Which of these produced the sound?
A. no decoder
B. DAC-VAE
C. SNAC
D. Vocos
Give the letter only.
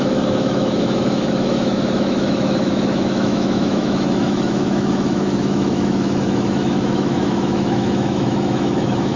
B